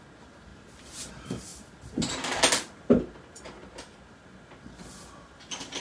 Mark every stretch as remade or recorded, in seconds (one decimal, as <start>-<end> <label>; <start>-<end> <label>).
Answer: 0.0-5.8 recorded